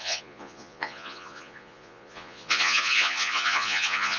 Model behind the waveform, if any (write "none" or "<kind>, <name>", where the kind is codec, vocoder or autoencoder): vocoder, Vocos